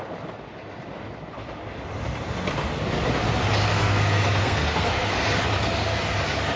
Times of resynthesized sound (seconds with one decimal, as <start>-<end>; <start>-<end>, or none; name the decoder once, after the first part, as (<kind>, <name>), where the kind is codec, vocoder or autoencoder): 3.6-5.3 (codec, SNAC)